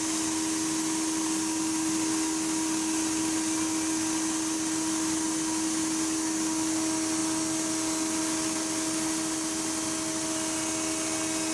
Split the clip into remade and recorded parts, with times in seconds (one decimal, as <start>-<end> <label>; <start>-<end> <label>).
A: 0.0-11.5 recorded